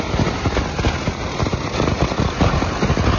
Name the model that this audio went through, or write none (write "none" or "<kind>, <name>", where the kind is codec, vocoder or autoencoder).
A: none